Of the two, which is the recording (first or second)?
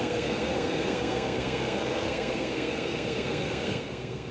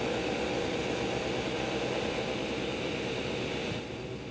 second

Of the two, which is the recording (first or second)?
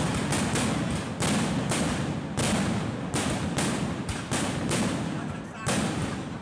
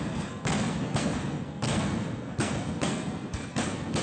first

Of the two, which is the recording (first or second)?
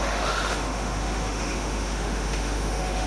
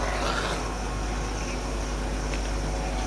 second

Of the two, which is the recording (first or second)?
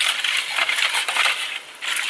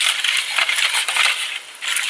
second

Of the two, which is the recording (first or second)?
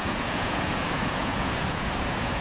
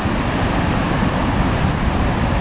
second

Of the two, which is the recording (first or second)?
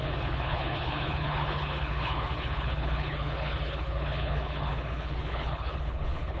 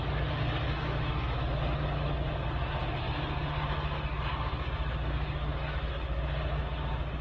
second